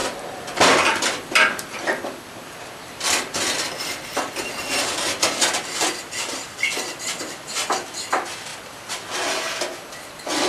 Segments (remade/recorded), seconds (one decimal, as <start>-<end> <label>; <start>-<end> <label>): 0.0-10.5 remade